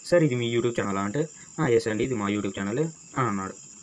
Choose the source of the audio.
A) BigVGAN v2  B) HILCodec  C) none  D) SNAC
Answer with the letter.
C